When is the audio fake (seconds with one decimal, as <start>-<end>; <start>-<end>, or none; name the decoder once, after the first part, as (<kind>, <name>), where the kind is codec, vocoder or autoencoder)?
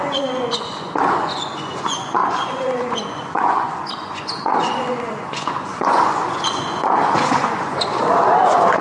0.0-8.8 (vocoder, Vocos)